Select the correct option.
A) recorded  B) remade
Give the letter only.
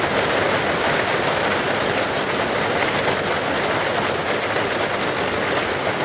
A